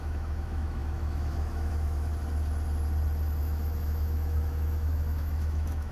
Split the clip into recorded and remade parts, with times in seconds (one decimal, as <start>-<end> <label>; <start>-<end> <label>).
0.0-2.1 remade; 2.1-3.4 recorded; 3.4-5.9 remade